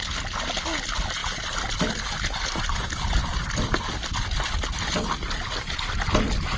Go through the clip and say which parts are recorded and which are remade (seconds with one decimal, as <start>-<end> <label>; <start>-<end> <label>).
0.0-6.6 recorded